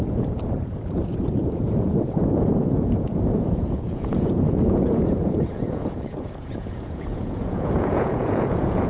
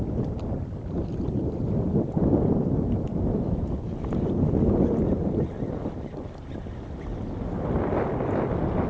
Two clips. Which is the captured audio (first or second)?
second